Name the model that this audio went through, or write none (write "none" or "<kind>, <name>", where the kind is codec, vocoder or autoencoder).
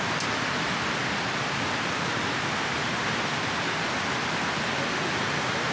none